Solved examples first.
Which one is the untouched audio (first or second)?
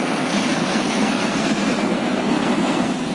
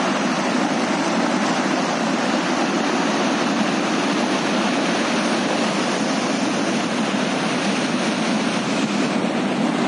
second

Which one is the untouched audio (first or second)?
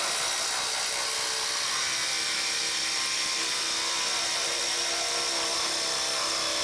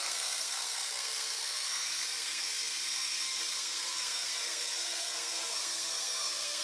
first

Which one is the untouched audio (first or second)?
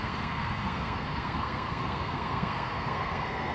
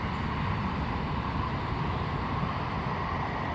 second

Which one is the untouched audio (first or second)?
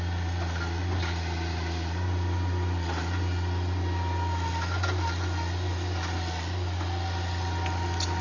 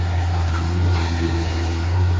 first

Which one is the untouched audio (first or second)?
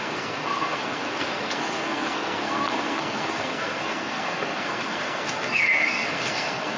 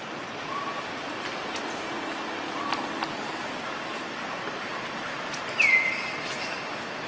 second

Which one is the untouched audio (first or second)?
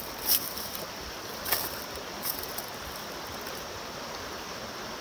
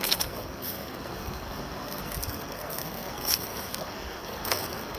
first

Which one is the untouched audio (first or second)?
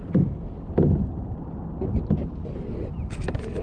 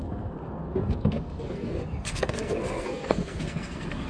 first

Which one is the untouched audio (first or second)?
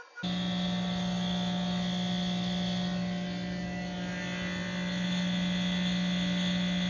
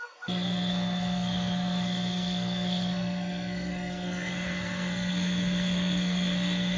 first